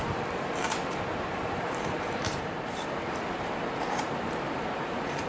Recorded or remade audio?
remade